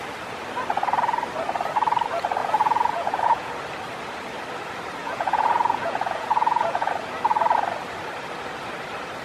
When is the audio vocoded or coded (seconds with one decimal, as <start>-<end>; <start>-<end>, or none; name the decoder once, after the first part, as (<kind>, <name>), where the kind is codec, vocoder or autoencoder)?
2.4-3.5 (vocoder, Vocos); 5.0-6.9